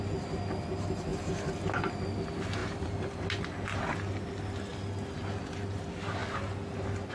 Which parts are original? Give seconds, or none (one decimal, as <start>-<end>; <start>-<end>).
1.1-2.1; 4.7-5.4; 6.2-7.1